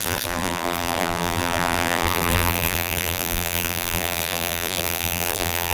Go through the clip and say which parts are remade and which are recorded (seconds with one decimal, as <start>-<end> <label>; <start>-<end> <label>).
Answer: 0.0-5.7 remade